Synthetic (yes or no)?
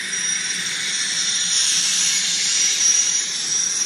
yes